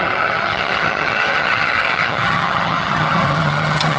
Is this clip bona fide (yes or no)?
no